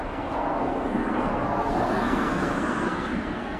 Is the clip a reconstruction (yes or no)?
yes